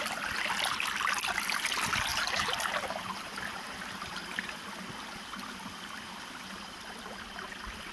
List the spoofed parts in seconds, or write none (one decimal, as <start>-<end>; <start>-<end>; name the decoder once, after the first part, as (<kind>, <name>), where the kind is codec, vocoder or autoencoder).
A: 2.1-4.5 (vocoder, BigVGAN v2)